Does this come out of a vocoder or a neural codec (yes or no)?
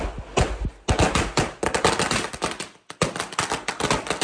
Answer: no